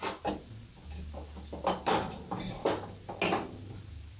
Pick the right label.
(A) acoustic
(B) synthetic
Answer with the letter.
A